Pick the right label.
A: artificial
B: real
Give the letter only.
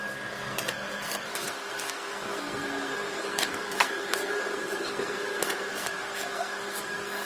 A